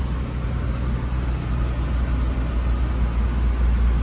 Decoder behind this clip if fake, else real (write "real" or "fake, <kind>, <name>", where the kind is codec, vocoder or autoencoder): real